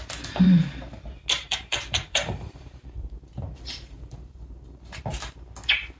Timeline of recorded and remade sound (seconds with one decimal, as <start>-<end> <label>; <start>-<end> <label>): 0.0-1.4 recorded; 1.4-5.0 remade; 5.0-6.0 recorded